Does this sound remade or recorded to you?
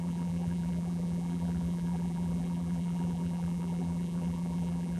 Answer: remade